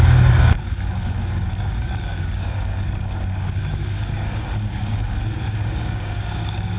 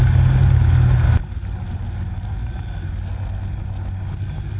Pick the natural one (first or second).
second